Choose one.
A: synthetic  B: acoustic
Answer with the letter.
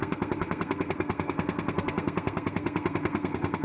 A